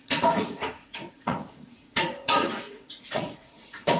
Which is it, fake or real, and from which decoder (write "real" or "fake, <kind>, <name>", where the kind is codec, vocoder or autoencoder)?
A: fake, vocoder, Vocos